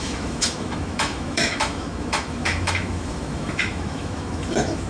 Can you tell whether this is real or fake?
fake